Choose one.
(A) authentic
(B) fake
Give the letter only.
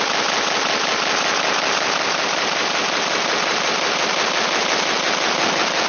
A